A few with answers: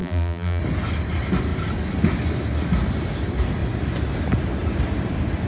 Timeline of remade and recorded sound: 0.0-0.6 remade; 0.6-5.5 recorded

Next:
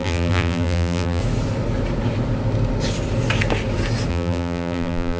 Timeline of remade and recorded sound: 0.0-1.2 remade; 1.2-4.1 recorded; 4.1-5.2 remade